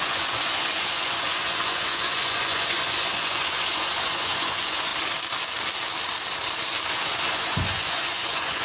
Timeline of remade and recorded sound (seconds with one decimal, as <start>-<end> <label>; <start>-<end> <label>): 0.0-4.9 remade; 4.9-6.9 recorded; 6.9-8.6 remade